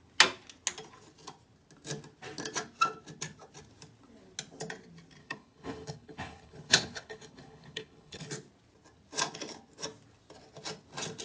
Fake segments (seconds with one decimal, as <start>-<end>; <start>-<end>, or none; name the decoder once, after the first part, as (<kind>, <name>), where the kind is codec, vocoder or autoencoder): 5.2-8.3 (codec, HILCodec)